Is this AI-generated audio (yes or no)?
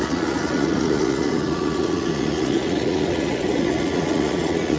yes